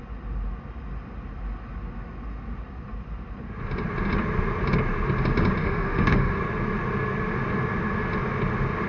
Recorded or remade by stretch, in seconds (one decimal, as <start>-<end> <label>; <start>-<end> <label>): 0.0-5.6 recorded; 5.6-6.4 remade; 6.4-8.9 recorded